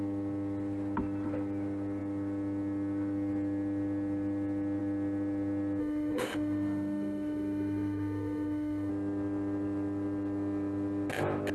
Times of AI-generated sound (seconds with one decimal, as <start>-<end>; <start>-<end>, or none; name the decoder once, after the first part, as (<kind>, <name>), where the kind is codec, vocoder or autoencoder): 5.8-8.9 (autoencoder, DAC-VAE)